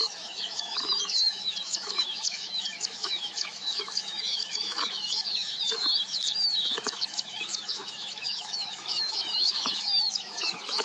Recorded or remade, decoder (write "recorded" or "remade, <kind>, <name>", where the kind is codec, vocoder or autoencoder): remade, autoencoder, DAC-VAE